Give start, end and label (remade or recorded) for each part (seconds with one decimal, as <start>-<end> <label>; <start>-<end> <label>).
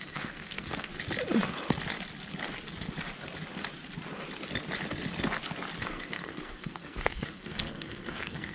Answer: 0.0-0.9 remade; 0.9-5.8 recorded; 5.8-8.5 remade